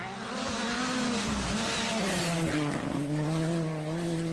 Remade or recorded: recorded